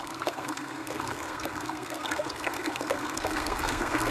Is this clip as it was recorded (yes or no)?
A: no